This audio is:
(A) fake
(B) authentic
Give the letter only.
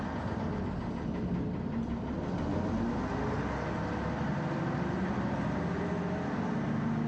B